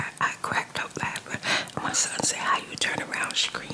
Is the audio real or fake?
real